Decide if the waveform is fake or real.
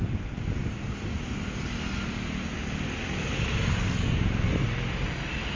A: real